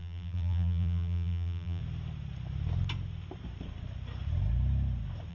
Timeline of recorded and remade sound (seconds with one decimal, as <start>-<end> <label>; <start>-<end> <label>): 0.0-1.8 remade; 1.8-5.3 recorded